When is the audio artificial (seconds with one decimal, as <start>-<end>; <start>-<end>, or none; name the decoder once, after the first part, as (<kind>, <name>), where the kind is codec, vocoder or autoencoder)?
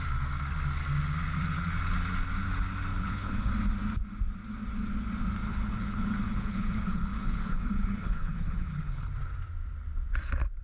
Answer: 2.9-3.5 (codec, HILCodec); 5.5-9.1